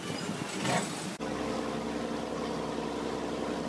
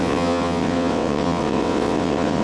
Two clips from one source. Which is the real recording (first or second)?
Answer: first